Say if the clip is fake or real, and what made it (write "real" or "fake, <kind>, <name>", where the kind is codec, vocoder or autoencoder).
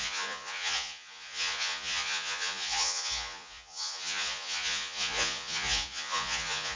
fake, vocoder, Vocos